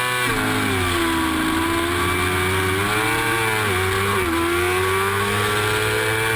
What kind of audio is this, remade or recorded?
recorded